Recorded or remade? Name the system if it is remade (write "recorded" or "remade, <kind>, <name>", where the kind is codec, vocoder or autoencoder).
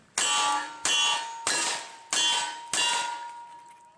recorded